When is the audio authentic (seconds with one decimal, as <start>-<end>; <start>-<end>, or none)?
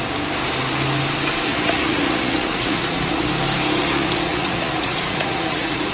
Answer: 0.0-1.5; 3.3-3.8